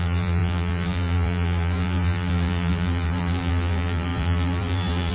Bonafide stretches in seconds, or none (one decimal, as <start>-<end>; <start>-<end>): none